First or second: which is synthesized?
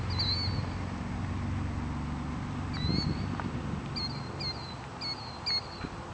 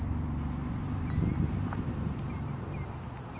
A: second